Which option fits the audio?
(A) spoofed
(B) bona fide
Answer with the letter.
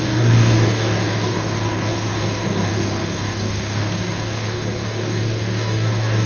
A